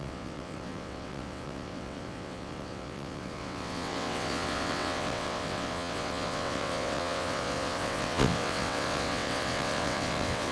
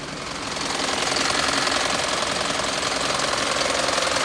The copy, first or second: first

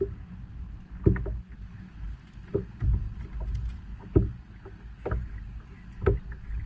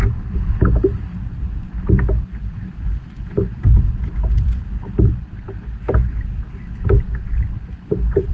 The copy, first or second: second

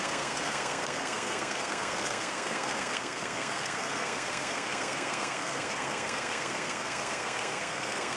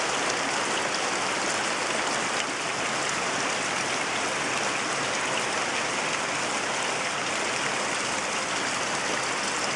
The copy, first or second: first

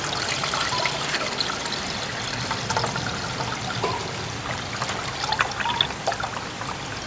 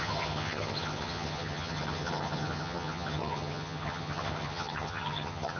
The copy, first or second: second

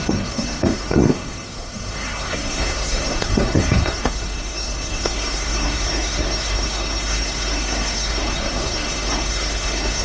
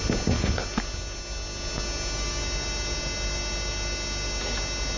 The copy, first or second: first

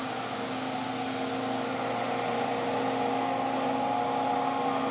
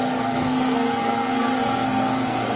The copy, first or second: second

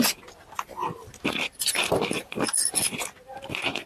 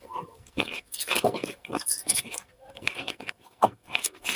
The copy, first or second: second